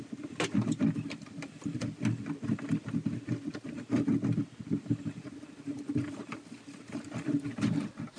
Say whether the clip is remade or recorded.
recorded